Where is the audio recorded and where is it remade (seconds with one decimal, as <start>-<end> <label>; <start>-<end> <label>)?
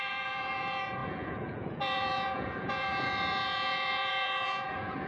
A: 0.0-5.1 remade